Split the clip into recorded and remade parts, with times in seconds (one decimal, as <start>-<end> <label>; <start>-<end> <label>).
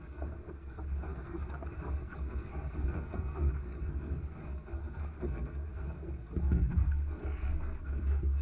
0.0-8.4 remade